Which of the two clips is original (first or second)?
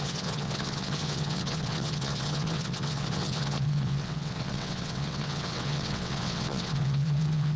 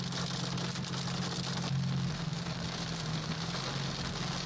second